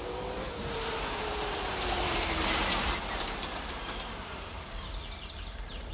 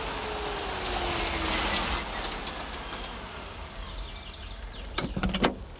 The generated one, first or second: first